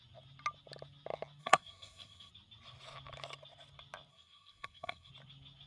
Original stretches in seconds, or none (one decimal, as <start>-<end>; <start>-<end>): 0.0-1.4; 2.3-4.1; 5.1-5.7